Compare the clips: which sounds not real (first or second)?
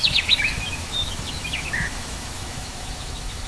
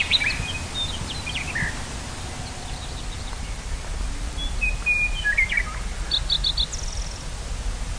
first